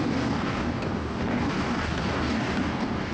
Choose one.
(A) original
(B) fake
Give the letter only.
B